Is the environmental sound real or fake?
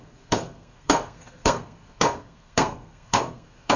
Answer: fake